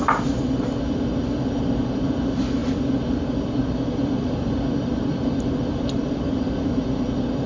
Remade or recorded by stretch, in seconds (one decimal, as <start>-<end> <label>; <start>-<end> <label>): 0.0-2.6 recorded; 2.6-6.6 remade; 6.6-7.5 recorded